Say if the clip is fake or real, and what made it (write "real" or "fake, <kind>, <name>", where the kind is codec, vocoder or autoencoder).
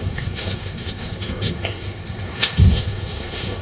fake, codec, SNAC